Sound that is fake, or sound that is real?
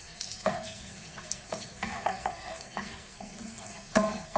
fake